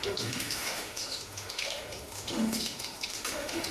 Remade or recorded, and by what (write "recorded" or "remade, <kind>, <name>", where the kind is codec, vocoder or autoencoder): remade, autoencoder, DAC-VAE